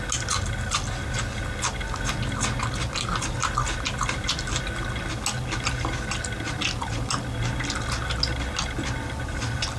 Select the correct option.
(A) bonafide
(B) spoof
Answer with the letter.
A